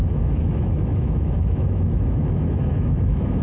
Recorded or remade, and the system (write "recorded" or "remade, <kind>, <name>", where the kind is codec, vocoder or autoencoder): remade, autoencoder, DAC-VAE